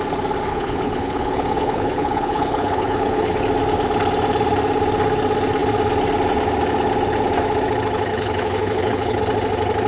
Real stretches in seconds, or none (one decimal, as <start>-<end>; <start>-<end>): 0.0-0.5; 3.4-8.1; 9.2-9.9